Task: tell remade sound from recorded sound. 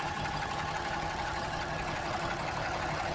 remade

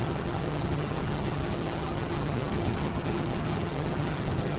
remade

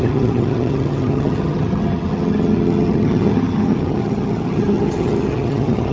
remade